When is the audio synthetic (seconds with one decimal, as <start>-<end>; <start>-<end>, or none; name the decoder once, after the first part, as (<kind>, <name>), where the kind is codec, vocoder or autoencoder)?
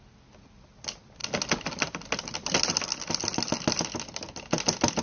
none